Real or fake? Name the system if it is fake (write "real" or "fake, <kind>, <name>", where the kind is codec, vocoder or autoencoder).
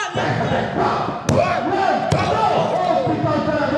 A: real